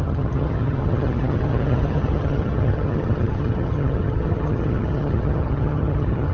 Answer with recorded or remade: remade